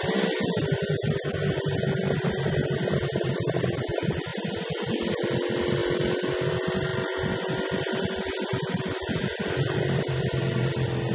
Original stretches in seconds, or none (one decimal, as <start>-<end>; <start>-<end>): 0.0-4.3; 5.1-9.3; 10.7-11.1

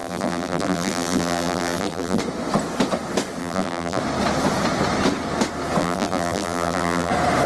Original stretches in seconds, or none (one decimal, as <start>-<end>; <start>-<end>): 2.2-3.4; 4.0-5.8; 7.1-7.5

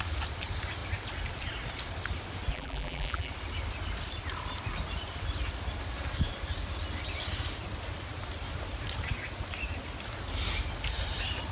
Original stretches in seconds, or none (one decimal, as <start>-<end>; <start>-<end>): 0.0-2.5; 3.3-11.5

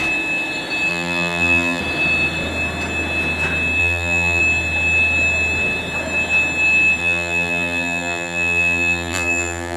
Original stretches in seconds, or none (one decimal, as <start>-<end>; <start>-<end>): 0.0-0.9; 1.8-3.8; 4.4-7.0

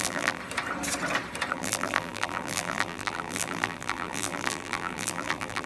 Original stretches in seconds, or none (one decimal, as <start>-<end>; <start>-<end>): 0.4-1.5

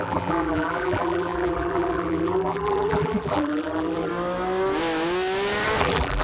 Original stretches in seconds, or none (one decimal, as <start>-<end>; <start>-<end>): 4.1-5.8

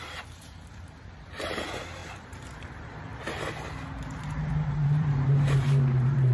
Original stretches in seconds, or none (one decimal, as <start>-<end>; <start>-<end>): 3.1-4.3

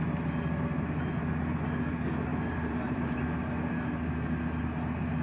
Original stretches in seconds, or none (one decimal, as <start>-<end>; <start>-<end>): 0.0-2.3; 3.2-5.2